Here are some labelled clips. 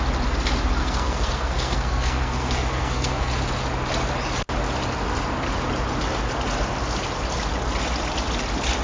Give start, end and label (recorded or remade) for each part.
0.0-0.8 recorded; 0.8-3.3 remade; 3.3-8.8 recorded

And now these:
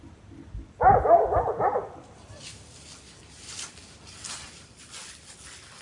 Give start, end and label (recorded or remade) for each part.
0.0-5.8 recorded

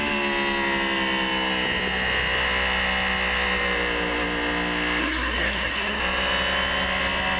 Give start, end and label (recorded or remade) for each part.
0.0-5.0 recorded; 5.0-6.0 remade; 6.0-7.4 recorded